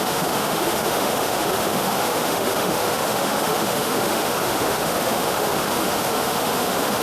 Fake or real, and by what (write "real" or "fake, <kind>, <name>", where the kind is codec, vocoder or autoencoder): fake, autoencoder, DAC-VAE